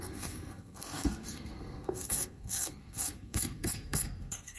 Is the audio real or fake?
fake